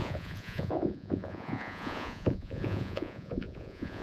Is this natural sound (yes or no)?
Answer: no